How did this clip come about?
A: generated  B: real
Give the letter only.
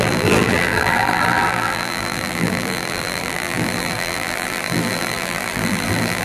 A